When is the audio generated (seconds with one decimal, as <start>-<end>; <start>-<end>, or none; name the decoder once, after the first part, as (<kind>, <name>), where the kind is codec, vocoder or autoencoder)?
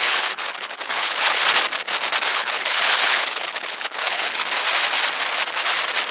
0.0-1.4 (codec, HILCodec); 2.3-4.4